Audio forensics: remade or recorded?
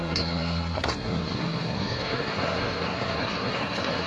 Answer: remade